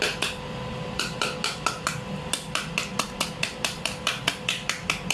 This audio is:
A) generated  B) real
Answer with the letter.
A